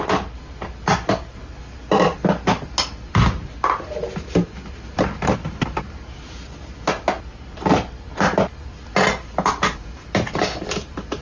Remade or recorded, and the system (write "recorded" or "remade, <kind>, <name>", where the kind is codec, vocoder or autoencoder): recorded